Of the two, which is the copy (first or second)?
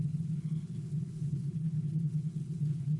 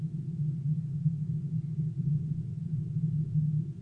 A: first